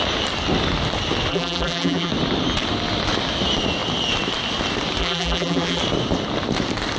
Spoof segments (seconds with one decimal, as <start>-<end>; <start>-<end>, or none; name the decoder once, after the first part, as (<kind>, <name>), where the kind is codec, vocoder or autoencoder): 1.3-2.1 (vocoder, BigVGAN v2); 5.0-5.8